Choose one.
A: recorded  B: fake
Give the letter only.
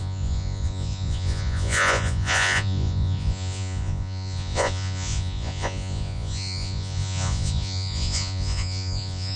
B